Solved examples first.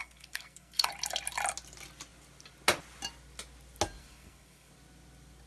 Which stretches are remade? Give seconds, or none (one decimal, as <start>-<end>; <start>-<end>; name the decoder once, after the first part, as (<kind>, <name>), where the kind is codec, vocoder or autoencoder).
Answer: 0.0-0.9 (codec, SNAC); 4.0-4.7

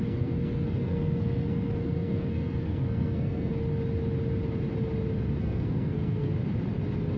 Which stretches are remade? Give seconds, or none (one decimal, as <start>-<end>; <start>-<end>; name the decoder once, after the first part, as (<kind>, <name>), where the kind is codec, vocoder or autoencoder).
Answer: 0.0-3.5 (codec, SNAC); 5.4-6.3

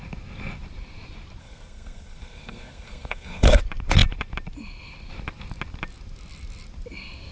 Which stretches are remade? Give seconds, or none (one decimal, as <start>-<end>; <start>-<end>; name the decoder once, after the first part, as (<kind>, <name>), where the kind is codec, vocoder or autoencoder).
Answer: 1.4-3.6 (codec, SNAC)

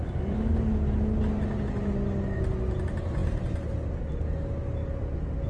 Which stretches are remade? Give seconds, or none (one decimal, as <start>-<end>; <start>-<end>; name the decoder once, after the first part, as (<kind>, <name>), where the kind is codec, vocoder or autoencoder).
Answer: none

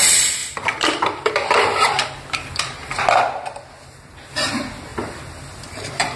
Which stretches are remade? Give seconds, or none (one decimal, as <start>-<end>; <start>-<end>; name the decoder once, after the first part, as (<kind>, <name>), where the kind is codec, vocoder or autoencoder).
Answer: 0.4-3.0 (vocoder, BigVGAN v2); 4.9-6.2